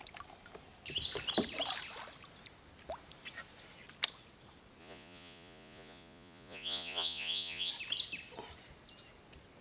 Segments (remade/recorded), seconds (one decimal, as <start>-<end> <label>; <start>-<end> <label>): 0.0-4.8 recorded; 4.8-7.7 remade; 7.7-9.6 recorded